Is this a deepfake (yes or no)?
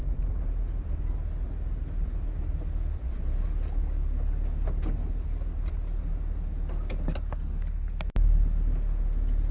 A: no